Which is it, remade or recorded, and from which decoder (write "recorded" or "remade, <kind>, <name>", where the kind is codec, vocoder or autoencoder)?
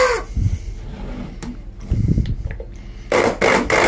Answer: recorded